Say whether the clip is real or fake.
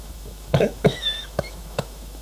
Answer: fake